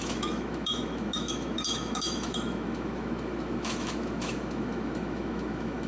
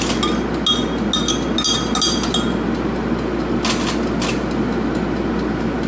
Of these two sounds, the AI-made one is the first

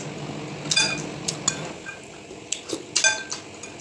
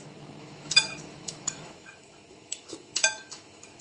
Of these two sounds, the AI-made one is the second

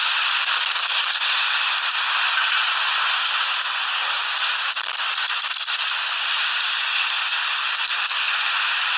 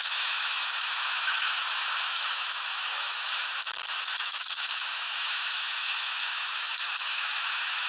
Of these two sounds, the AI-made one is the second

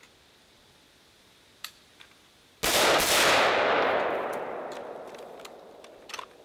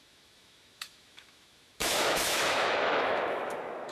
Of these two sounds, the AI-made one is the second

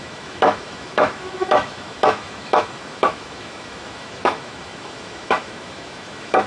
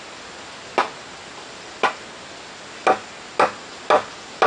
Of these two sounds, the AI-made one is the first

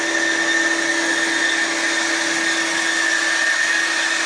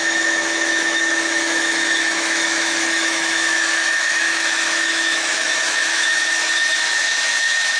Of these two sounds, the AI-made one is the second